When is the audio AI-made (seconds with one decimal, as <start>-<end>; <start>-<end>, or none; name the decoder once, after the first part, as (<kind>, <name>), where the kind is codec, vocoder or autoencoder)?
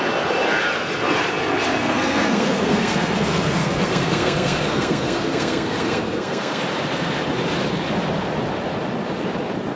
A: 1.8-6.6 (codec, SNAC)